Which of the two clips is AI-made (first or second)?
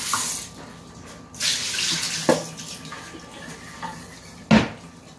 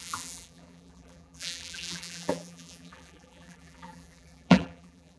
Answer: second